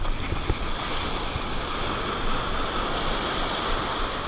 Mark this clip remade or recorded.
recorded